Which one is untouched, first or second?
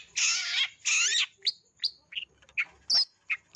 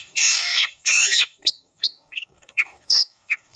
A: first